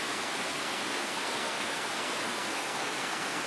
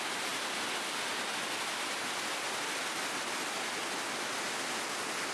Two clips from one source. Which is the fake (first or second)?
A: first